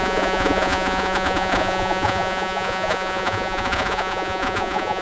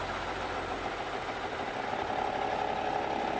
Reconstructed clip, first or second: first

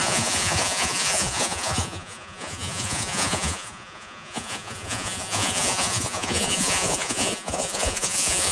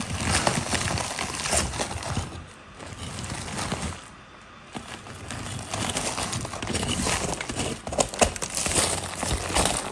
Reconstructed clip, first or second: first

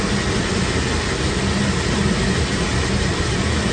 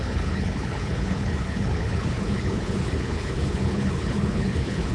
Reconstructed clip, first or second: second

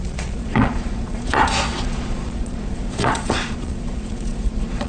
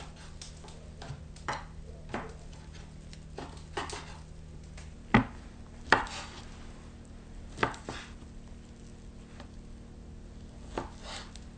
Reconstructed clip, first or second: first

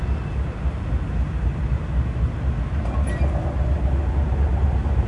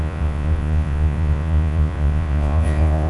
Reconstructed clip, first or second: second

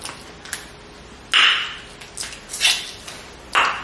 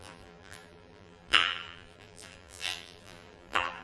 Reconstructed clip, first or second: second